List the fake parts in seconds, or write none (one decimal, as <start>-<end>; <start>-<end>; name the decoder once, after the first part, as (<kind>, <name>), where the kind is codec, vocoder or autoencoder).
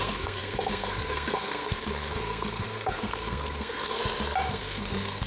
0.0-4.0 (codec, SNAC); 4.5-5.3